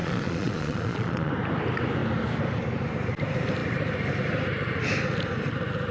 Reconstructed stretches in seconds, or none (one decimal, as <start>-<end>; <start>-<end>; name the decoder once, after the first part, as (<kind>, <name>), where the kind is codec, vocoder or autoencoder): 0.0-1.3 (vocoder, Vocos)